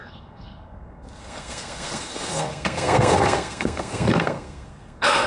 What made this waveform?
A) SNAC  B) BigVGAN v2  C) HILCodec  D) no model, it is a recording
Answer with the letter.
A